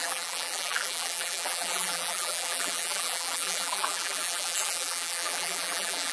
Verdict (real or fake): fake